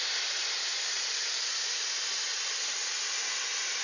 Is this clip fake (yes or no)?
no